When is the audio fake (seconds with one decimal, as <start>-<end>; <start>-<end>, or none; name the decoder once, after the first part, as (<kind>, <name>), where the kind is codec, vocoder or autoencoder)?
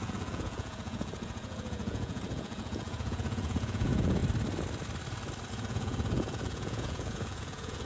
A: 0.0-4.2 (vocoder, Vocos); 5.5-7.9